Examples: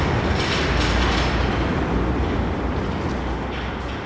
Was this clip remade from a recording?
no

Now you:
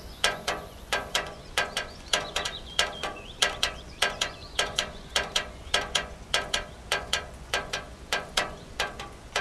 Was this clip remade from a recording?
yes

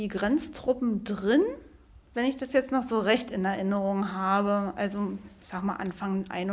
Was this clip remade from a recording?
no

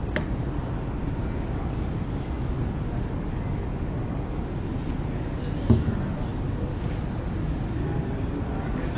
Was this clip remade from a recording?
no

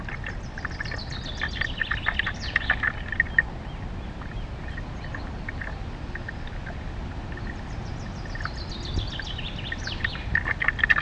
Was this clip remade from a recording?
no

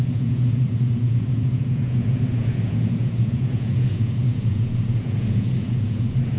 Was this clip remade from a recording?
yes